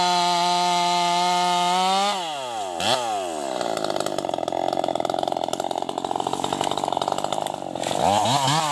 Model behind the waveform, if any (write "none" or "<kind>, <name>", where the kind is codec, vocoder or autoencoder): none